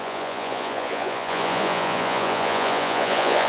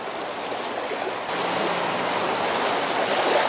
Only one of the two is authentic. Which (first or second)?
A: second